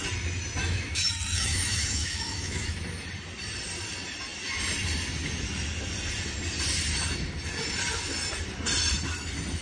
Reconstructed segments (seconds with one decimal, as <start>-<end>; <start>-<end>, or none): 0.6-2.8